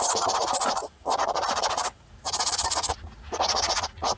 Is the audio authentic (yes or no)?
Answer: no